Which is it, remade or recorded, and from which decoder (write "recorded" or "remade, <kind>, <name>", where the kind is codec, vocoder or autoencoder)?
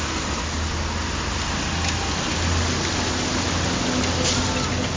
recorded